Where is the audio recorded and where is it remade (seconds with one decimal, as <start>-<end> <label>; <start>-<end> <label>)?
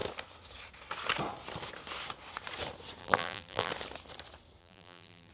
0.0-3.0 recorded; 3.0-3.7 remade; 3.7-4.6 recorded; 4.6-5.3 remade